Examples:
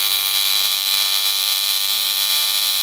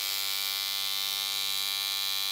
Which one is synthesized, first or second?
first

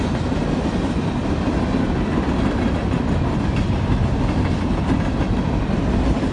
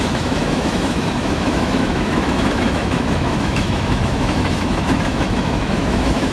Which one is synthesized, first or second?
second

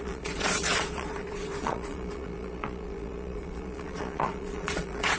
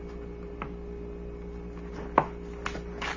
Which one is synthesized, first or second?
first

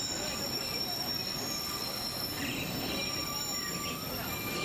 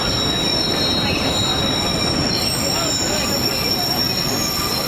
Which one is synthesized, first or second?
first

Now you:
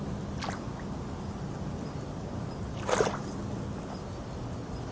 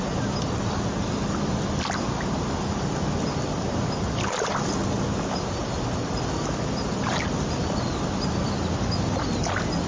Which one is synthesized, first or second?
second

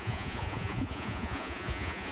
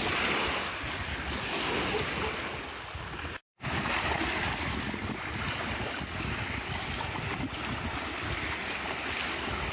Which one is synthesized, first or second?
first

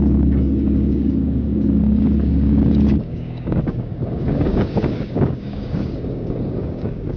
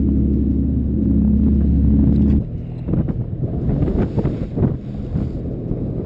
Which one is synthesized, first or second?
first